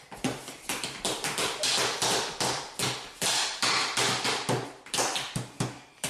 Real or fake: real